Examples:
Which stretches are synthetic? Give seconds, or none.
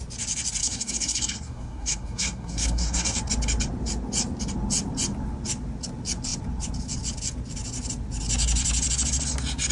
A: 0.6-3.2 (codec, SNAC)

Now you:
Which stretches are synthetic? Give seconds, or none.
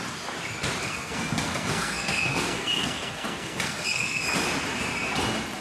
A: 0.8-4.2 (codec, SNAC)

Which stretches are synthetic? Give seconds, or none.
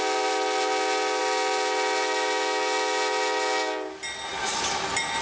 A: none